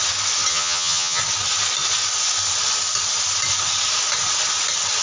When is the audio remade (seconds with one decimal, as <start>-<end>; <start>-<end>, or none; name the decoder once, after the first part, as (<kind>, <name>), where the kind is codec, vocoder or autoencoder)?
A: 0.5-1.2 (vocoder, HiFi-GAN)